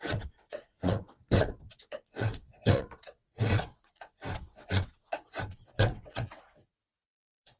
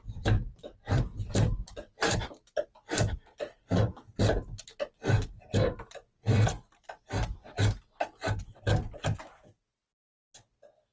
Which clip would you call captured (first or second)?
second